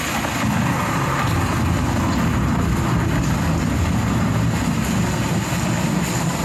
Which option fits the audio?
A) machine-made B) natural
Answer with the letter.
B